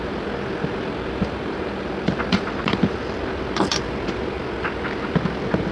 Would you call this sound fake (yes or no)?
yes